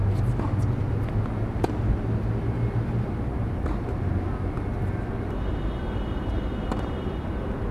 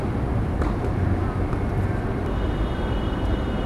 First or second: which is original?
first